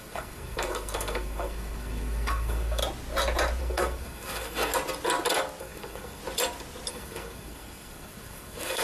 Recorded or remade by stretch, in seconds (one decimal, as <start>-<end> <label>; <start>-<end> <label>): 0.0-2.8 remade; 2.8-3.6 recorded; 3.6-4.7 remade; 4.7-5.6 recorded; 5.6-6.2 remade; 6.2-6.9 recorded; 6.9-8.8 remade